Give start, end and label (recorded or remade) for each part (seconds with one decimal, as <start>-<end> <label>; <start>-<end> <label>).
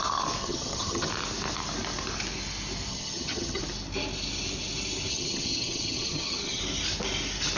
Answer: 0.0-0.4 recorded; 0.4-1.1 remade; 1.1-2.9 recorded; 2.9-3.6 remade; 3.6-5.1 recorded; 5.1-6.6 remade; 6.6-7.6 recorded